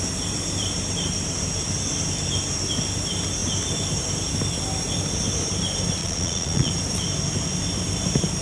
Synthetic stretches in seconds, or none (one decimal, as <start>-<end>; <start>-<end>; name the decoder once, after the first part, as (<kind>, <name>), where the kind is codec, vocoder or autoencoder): 6.0-6.7 (vocoder, Vocos)